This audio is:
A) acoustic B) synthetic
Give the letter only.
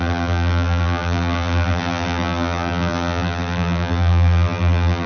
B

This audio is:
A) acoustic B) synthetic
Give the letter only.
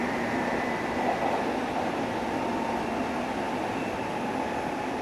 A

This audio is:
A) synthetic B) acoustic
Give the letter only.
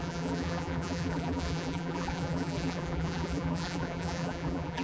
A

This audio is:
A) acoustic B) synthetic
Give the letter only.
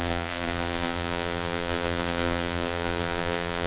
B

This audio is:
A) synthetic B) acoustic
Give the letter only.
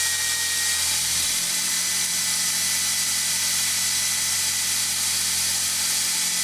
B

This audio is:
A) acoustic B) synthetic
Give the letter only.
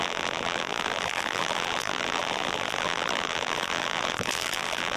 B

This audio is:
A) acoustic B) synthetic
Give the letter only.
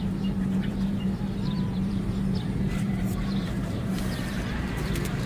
B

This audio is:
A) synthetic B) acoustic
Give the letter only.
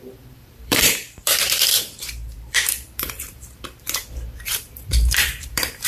A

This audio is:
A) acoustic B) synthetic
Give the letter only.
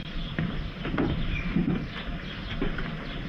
A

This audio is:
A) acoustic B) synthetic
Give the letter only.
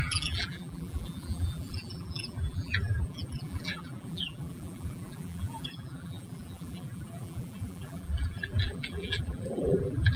B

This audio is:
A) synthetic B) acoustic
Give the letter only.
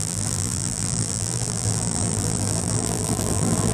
A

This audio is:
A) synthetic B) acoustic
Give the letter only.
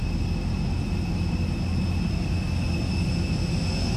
B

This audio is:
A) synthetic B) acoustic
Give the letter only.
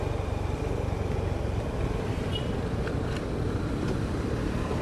A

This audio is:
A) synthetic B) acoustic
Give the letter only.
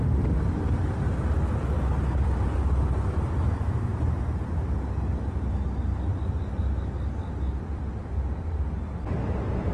B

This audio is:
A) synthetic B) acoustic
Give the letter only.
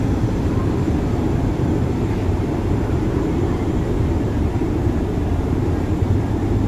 A